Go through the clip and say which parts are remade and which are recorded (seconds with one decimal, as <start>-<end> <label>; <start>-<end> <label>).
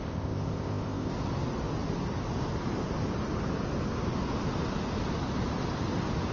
0.0-1.1 remade; 1.1-6.3 recorded